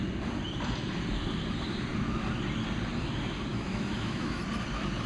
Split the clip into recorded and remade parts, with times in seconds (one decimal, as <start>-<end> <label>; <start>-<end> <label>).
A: 0.0-3.5 recorded; 3.5-4.4 remade; 4.4-5.1 recorded